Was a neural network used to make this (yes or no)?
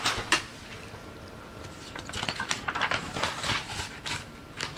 no